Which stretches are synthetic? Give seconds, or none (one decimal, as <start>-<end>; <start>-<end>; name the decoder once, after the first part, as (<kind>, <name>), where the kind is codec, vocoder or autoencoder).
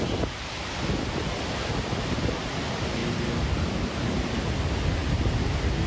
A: none